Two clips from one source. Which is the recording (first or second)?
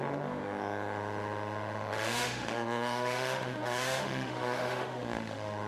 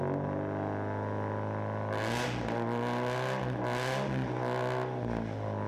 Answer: second